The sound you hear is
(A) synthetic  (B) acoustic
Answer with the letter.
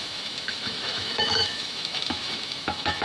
A